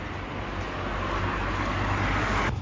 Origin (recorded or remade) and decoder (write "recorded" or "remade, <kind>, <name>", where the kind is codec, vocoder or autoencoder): recorded